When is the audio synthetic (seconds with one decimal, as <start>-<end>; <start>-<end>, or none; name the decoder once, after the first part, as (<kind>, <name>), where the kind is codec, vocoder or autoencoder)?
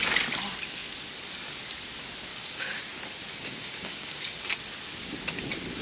2.3-2.8 (codec, DAC); 3.3-4.2